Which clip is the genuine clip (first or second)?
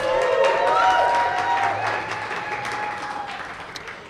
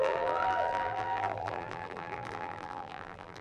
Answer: first